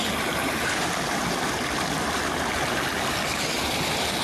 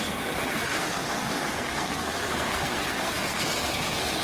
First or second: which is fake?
second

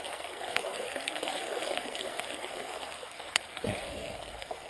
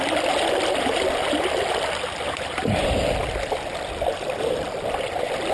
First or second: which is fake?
first